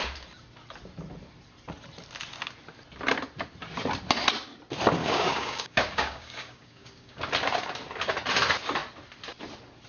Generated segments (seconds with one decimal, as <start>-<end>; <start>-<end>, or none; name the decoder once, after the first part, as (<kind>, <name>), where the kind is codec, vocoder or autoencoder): 5.0-7.2 (codec, DAC)